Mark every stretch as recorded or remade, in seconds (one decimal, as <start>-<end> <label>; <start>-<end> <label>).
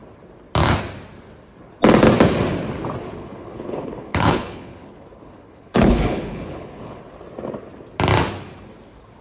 0.0-3.2 recorded; 3.2-7.0 remade; 7.0-9.2 recorded